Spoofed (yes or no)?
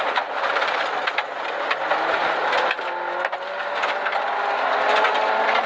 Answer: no